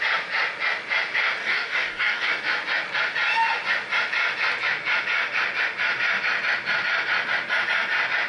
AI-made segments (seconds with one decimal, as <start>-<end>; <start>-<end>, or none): 1.4-2.3